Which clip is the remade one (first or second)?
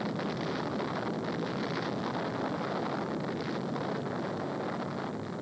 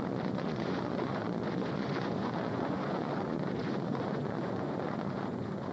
second